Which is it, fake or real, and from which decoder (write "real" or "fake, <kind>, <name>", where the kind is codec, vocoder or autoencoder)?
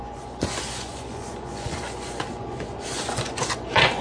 fake, vocoder, Vocos